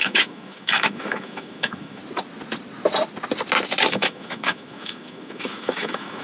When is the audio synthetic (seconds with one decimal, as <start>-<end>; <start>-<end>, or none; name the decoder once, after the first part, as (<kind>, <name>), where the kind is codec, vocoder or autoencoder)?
0.0-2.0 (autoencoder, DAC-VAE); 3.9-6.2